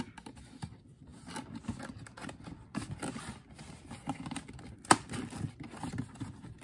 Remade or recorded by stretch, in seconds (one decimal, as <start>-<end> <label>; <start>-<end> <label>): 0.0-6.6 recorded